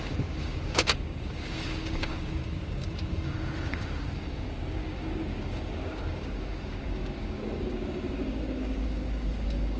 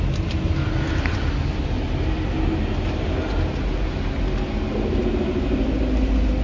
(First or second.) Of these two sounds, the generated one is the first